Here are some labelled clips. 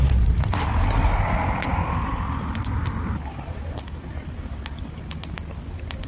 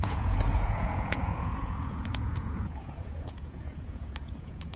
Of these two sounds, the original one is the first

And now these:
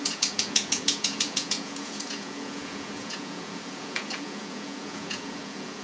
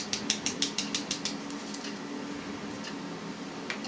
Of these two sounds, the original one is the second